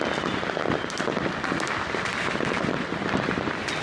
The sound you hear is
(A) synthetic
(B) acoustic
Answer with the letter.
B